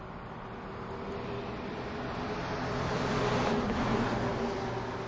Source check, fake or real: real